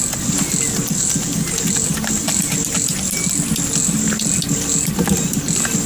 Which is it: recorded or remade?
recorded